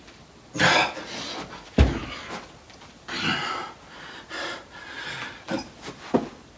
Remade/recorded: recorded